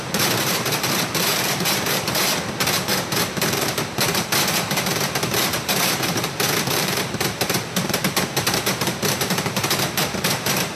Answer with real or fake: fake